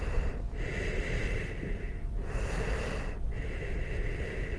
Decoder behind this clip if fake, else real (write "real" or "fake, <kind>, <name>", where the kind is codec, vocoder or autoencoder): real